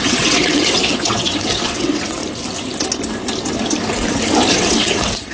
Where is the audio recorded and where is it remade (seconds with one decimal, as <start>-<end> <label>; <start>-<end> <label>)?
0.0-2.2 remade; 2.2-4.5 recorded; 4.5-5.3 remade